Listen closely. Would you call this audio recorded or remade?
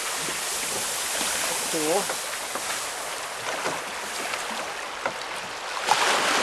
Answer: recorded